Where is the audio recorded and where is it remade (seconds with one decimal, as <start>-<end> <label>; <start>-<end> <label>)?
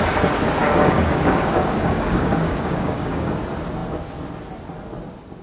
0.0-0.6 recorded; 0.6-3.4 remade; 3.4-5.4 recorded